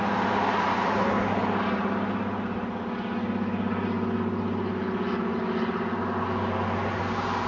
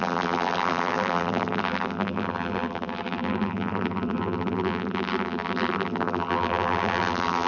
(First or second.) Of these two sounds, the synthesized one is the second